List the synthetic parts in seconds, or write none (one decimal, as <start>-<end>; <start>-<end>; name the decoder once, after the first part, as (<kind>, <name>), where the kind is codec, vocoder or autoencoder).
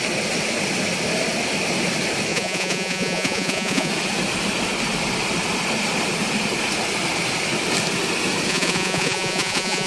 2.3-3.9 (vocoder, Vocos); 8.5-9.9